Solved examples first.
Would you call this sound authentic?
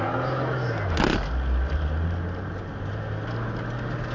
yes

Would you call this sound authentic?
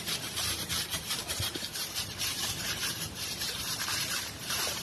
no